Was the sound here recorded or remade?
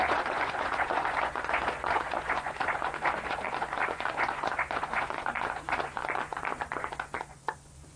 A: remade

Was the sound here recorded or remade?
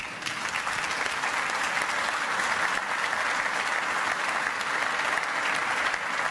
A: recorded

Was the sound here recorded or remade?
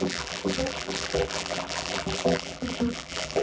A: remade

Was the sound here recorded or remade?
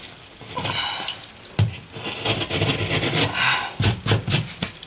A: recorded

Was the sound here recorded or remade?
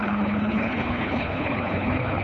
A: remade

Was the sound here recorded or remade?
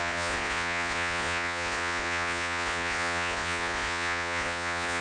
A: remade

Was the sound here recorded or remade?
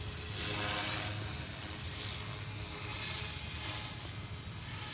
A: recorded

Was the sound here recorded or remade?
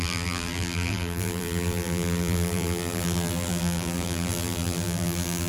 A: remade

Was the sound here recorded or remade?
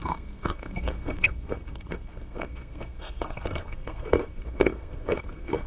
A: remade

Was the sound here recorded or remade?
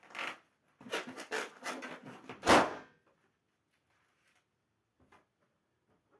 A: recorded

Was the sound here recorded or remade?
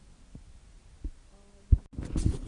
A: recorded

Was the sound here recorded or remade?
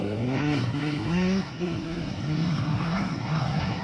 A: remade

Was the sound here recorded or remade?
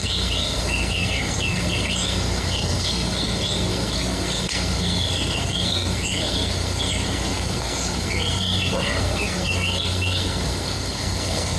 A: remade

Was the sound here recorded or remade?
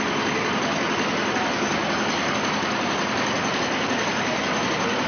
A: recorded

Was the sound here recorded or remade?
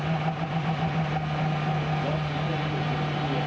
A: recorded